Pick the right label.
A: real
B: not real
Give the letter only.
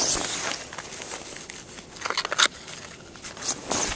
A